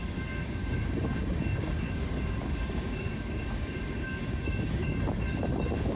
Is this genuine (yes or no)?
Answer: no